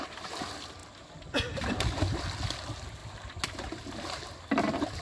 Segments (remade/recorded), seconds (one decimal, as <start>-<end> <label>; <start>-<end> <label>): 0.0-5.0 recorded